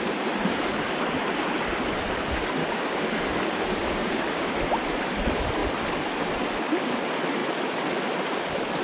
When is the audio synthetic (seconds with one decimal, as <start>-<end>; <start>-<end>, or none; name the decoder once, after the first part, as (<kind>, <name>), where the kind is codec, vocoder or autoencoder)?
2.6-4.5 (codec, DAC)